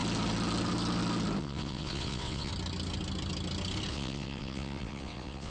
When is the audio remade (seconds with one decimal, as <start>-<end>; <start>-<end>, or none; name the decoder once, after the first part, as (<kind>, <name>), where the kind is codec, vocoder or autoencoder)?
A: 1.4-2.5 (vocoder, WaveNeXt); 3.9-5.5